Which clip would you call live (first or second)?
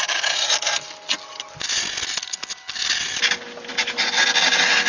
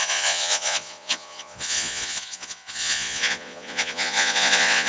first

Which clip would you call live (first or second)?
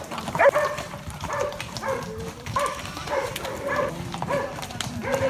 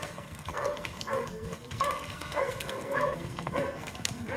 first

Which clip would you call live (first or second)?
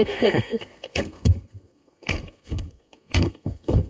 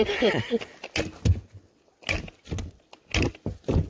second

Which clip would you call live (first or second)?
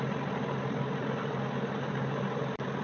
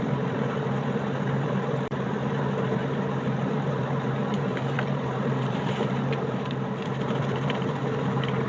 first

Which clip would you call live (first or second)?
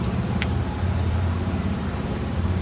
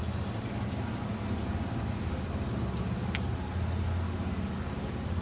second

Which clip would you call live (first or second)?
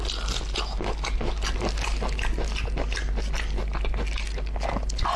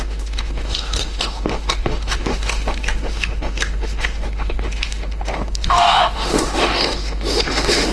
first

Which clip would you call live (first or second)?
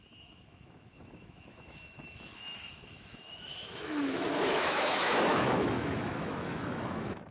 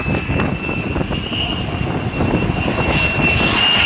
second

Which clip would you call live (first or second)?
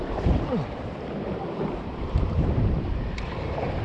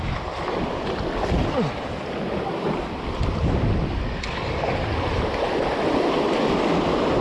second